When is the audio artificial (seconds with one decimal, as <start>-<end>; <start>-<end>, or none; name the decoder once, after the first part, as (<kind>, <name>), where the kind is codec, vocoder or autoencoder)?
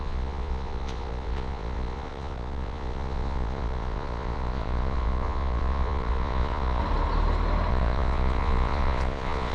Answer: 0.0-6.8 (vocoder, Vocos); 7.7-9.5